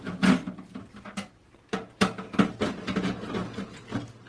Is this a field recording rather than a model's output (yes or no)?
yes